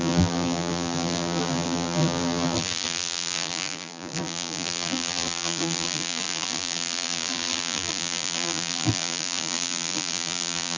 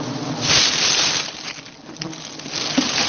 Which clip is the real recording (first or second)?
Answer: second